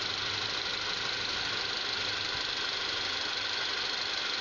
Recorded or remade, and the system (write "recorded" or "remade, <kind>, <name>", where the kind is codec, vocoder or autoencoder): remade, vocoder, BigVGAN v2